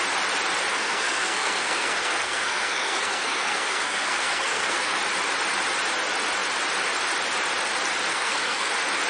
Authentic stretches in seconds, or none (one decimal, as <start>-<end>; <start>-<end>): 0.0-0.7; 5.0-8.1; 8.7-9.1